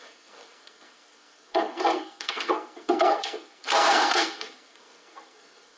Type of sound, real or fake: fake